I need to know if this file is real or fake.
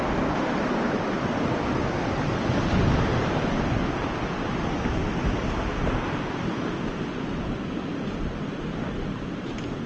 real